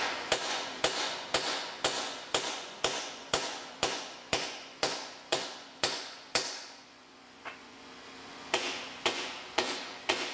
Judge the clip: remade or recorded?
remade